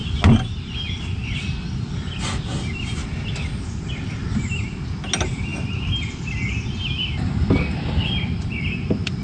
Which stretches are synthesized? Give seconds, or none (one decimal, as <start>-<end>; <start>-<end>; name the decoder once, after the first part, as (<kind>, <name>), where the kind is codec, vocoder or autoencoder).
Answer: none